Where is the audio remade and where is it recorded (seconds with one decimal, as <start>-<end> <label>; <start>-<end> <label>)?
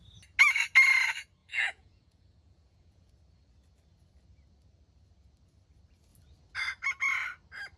0.0-1.4 recorded; 1.4-3.1 remade; 3.1-7.8 recorded